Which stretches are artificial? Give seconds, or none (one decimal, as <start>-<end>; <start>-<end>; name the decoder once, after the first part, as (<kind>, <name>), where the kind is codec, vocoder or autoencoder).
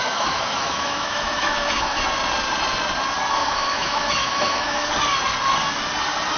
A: 0.0-2.0 (autoencoder, DAC-VAE); 3.4-4.9